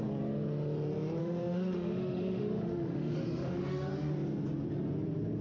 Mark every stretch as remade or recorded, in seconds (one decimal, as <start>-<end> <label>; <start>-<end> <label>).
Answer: 0.0-1.2 recorded; 1.2-4.1 remade; 4.1-5.4 recorded

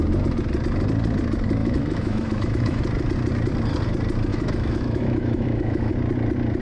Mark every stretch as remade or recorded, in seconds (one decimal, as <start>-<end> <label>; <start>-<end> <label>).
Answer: 0.0-1.6 recorded; 1.6-2.8 remade; 2.8-4.3 recorded; 4.3-5.9 remade; 5.9-6.6 recorded

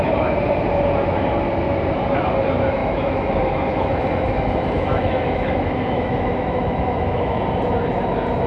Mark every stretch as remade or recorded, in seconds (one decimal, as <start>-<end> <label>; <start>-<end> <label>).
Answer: 0.0-2.8 recorded; 2.8-7.4 remade; 7.4-8.5 recorded

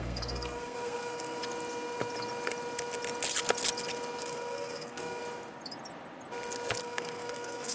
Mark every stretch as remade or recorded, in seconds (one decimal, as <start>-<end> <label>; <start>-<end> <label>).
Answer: 0.0-1.4 remade; 1.4-4.2 recorded; 4.2-5.2 remade; 5.2-6.8 recorded; 6.8-7.7 remade

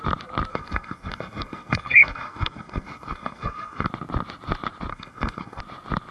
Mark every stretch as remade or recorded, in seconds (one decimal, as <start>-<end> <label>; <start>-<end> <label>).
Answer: 0.0-0.5 recorded; 0.5-3.9 remade; 3.9-4.9 recorded; 4.9-5.6 remade; 5.6-6.1 recorded